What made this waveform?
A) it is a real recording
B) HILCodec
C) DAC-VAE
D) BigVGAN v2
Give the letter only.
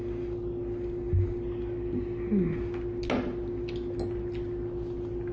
A